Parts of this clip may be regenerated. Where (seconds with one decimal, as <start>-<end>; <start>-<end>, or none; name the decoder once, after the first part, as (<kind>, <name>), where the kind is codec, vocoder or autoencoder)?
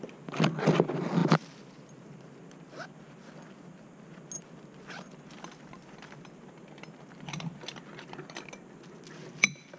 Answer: none